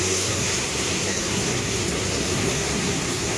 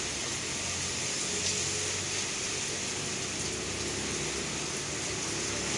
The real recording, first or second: second